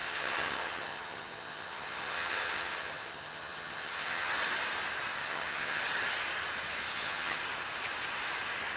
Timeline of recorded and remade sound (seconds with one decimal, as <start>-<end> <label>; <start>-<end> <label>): 0.0-4.3 remade; 4.3-5.2 recorded; 5.2-5.8 remade; 5.8-6.9 recorded; 6.9-7.4 remade; 7.4-8.8 recorded